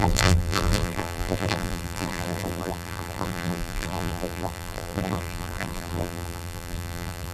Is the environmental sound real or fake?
fake